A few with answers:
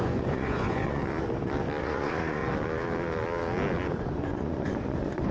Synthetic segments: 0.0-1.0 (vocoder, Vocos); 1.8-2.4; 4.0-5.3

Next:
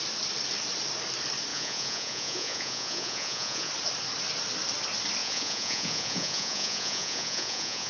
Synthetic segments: 1.5-3.7 (vocoder, Vocos); 5.2-7.9

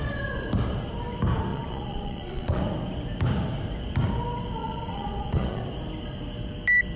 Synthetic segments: 1.5-2.6 (vocoder, Vocos); 4.6-5.6

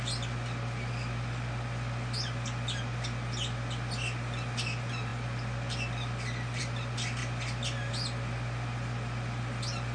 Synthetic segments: none

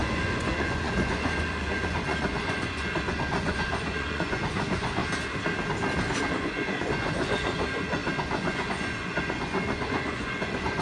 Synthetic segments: 0.0-5.0 (vocoder, Vocos); 6.3-10.8